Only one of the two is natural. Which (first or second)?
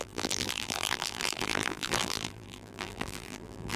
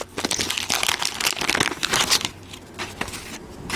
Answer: second